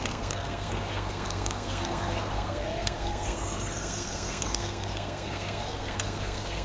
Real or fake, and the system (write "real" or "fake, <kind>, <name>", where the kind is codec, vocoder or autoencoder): fake, codec, SNAC